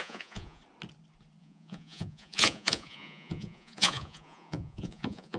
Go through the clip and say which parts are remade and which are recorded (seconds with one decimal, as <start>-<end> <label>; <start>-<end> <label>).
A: 0.0-0.6 remade; 0.6-1.4 recorded; 1.4-5.4 remade